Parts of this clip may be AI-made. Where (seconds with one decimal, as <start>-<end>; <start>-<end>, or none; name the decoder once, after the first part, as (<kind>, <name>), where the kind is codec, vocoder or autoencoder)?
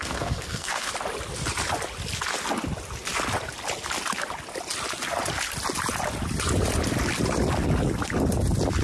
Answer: 0.0-0.9 (codec, SNAC)